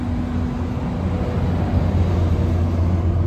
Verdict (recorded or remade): recorded